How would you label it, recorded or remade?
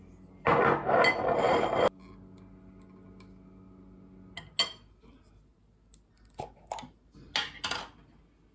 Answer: recorded